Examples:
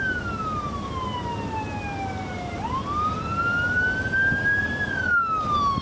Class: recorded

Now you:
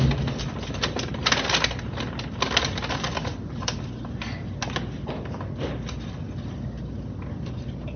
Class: recorded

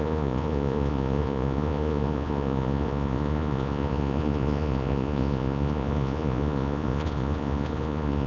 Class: remade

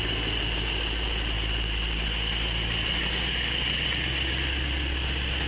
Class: recorded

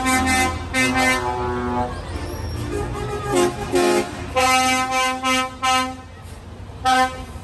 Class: recorded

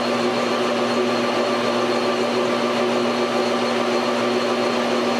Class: recorded